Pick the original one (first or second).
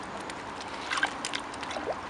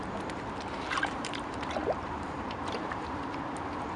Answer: first